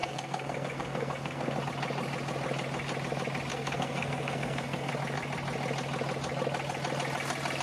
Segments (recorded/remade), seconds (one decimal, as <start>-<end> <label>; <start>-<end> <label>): 0.0-1.6 remade; 1.6-3.5 recorded; 3.5-4.9 remade; 4.9-7.6 recorded